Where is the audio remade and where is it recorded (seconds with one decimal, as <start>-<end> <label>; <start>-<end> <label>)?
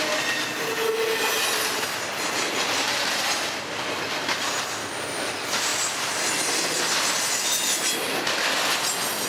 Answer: 0.0-9.3 recorded